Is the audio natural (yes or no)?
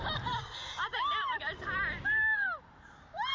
no